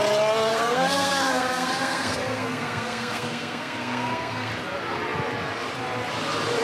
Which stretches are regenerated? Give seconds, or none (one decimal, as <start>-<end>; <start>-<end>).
0.5-4.5